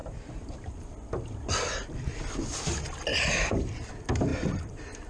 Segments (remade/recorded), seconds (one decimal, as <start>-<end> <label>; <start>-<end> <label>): 0.0-0.7 remade; 0.7-3.1 recorded; 3.1-3.9 remade; 3.9-4.3 recorded; 4.3-5.1 remade

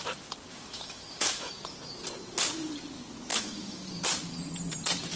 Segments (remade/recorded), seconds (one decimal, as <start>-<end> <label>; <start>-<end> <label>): 0.0-0.5 recorded; 0.5-1.5 remade; 1.5-3.3 recorded; 3.3-4.0 remade; 4.0-5.2 recorded

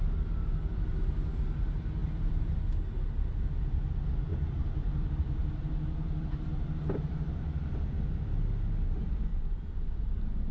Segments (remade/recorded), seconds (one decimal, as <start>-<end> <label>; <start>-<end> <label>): 0.0-0.7 recorded; 0.7-1.3 remade; 1.3-2.0 recorded; 2.0-2.6 remade; 2.6-4.3 recorded; 4.3-7.9 remade; 7.9-9.3 recorded; 9.3-10.1 remade; 10.1-10.5 recorded

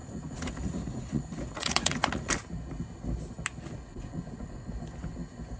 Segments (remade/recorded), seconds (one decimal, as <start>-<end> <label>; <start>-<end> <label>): 0.0-2.3 remade; 2.3-3.9 recorded; 3.9-4.7 remade; 4.7-5.6 recorded

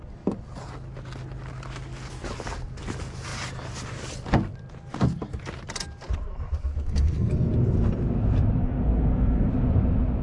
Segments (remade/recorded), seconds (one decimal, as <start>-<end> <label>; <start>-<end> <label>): 0.0-6.7 recorded; 6.7-7.3 remade; 7.3-8.6 recorded; 8.6-9.5 remade; 9.5-10.2 recorded

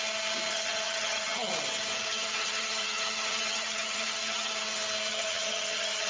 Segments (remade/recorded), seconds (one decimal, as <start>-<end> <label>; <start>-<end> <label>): 0.0-0.5 recorded; 0.5-1.5 remade; 1.5-2.1 recorded; 2.1-4.5 remade; 4.5-5.1 recorded; 5.1-6.1 remade

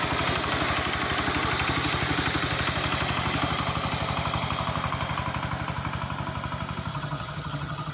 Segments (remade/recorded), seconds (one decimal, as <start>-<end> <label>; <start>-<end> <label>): 0.0-6.9 recorded; 6.9-7.9 remade

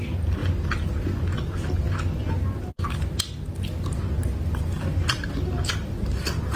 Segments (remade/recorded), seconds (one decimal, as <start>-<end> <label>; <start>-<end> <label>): 0.0-0.4 remade; 0.4-4.4 recorded; 4.4-6.6 remade